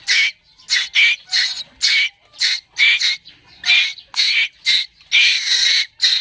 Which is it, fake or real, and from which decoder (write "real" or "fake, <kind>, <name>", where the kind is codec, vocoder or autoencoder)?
real